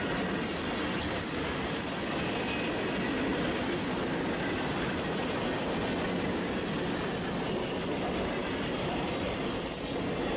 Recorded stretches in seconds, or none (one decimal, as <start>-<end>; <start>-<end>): 0.0-3.3; 5.4-8.4; 9.1-10.4